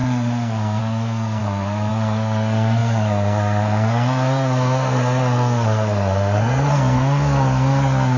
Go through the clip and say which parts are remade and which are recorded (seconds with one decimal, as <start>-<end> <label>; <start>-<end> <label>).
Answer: 0.0-8.2 remade

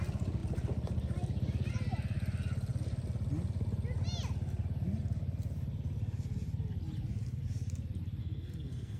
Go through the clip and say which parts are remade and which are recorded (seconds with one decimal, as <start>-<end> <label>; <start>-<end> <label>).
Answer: 0.0-8.2 recorded; 8.2-9.0 remade